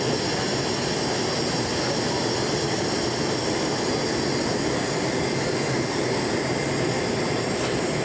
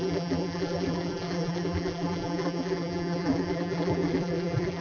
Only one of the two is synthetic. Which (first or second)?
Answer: second